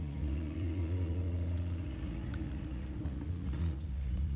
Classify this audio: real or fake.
fake